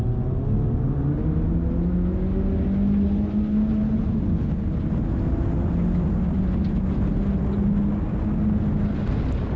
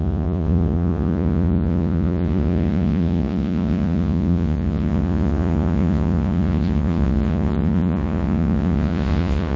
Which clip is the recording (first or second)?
first